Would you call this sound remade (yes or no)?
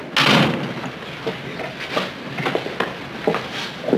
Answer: no